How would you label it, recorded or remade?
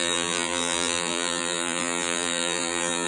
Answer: remade